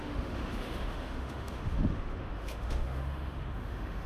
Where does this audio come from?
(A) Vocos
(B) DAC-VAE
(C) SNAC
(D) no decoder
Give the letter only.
B